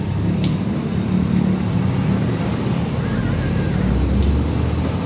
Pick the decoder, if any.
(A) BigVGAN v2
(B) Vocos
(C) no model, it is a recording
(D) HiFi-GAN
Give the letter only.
C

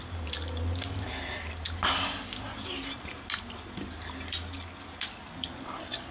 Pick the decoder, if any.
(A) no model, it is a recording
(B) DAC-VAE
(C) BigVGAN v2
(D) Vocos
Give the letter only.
A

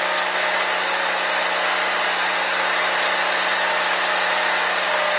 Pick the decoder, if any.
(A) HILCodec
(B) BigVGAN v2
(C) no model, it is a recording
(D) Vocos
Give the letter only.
C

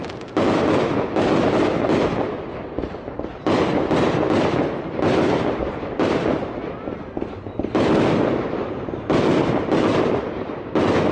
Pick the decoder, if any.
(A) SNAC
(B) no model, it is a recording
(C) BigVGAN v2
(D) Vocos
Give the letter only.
B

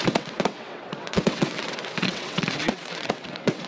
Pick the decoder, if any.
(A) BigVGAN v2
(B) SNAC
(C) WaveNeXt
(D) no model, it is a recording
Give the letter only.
C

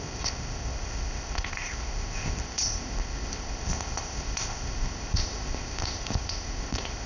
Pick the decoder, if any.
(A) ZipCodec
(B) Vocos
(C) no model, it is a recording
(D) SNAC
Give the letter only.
A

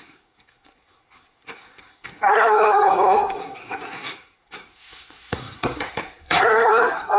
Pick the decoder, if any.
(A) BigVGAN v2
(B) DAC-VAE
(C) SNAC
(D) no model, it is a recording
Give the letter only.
C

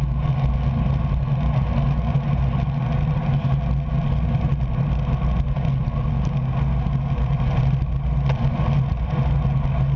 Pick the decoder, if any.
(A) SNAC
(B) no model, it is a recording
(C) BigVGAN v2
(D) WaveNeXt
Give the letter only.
B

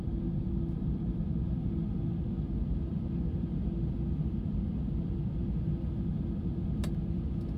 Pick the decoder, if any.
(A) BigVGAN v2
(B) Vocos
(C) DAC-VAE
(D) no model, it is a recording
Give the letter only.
D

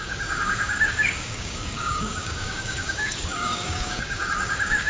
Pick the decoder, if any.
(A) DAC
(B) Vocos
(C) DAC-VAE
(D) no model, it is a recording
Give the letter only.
A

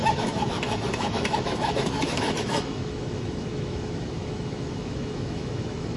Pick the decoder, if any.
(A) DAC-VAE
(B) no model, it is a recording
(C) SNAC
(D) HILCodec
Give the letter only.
A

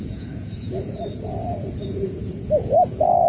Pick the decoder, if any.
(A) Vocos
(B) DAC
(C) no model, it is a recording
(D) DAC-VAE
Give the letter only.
A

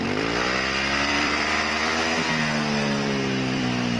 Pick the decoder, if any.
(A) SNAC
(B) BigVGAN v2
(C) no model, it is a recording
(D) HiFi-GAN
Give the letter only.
B